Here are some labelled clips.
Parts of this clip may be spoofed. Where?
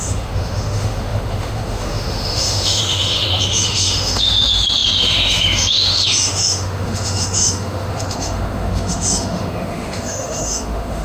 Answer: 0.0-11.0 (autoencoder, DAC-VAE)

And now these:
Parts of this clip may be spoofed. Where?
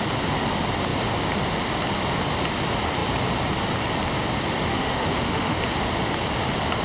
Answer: 4.7-5.6 (autoencoder, DAC-VAE)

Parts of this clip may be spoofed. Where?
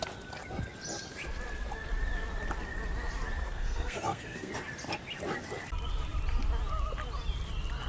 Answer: 3.4-4.5 (codec, SNAC)